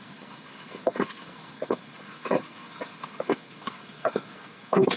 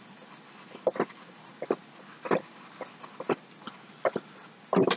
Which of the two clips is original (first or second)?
second